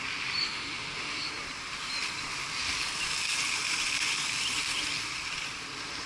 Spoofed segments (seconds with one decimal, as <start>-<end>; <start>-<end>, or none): 0.4-1.3